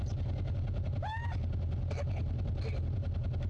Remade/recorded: recorded